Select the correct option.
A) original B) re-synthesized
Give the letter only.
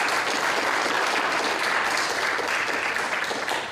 A